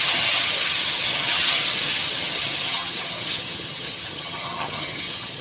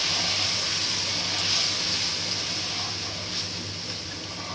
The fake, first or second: first